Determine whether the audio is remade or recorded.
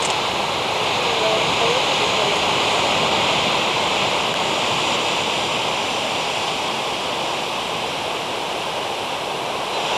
recorded